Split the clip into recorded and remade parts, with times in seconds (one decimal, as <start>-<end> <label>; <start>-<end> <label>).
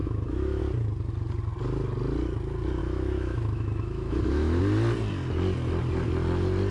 0.0-0.6 remade; 0.6-2.8 recorded; 2.8-4.6 remade; 4.6-6.7 recorded